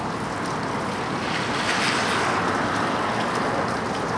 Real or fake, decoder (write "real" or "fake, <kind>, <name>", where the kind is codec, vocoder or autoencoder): real